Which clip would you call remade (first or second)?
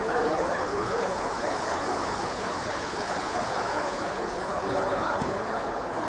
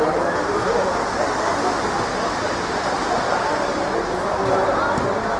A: first